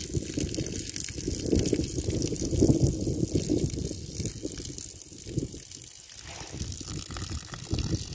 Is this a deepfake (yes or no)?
no